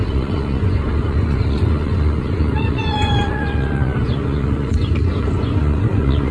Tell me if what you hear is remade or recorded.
remade